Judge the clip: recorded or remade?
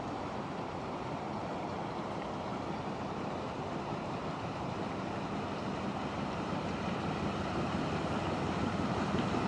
remade